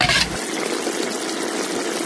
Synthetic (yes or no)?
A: no